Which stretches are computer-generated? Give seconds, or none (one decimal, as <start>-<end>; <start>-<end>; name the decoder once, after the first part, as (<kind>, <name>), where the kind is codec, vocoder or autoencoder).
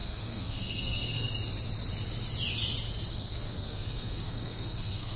0.0-1.3 (codec, SNAC); 3.1-5.2